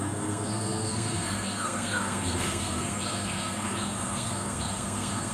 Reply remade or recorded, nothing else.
remade